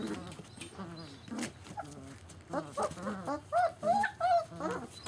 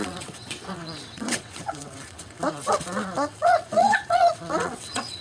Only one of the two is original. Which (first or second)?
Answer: first